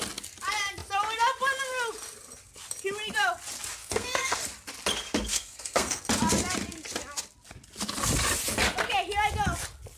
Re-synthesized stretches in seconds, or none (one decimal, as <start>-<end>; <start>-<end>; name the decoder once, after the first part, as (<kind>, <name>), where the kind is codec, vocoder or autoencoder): 3.8-4.4 (codec, SNAC); 5.3-6.0

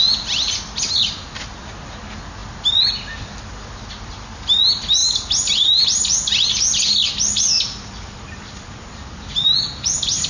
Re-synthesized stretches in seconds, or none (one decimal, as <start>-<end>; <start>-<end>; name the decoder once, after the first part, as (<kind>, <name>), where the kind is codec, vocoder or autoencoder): none

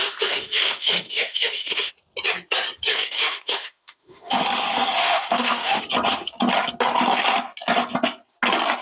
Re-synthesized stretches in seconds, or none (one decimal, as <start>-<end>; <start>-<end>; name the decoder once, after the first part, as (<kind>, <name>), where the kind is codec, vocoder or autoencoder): 0.0-1.9 (autoencoder, DAC-VAE); 2.9-4.4; 5.0-5.8

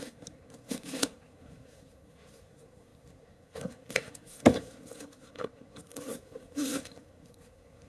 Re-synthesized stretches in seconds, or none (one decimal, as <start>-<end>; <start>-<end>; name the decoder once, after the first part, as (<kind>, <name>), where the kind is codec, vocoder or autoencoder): 0.0-7.9 (codec, SNAC)

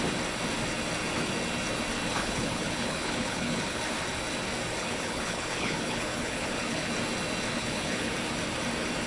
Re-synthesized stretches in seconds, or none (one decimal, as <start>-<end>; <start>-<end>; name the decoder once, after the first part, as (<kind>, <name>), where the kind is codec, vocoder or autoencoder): 2.1-3.8 (codec, HILCodec); 4.8-6.9; 7.5-8.1

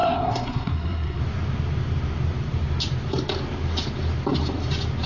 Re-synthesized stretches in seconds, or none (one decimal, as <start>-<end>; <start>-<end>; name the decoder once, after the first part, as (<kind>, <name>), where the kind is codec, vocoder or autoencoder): 0.0-1.2 (codec, SNAC)

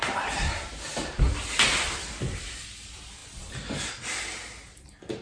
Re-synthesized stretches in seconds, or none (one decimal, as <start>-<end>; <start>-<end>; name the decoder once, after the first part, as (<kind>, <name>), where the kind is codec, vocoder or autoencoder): 3.2-3.9 (vocoder, BigVGAN v2)